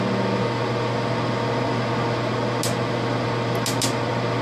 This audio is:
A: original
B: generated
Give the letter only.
A